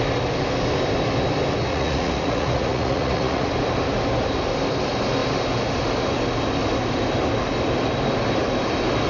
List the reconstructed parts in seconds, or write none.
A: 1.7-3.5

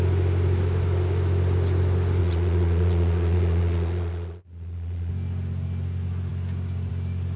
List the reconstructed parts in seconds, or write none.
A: 2.2-5.1

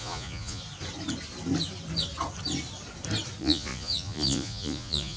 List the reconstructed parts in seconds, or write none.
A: 0.0-0.6; 3.4-5.2